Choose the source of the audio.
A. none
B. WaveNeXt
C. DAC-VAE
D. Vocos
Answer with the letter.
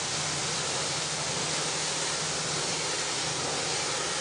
A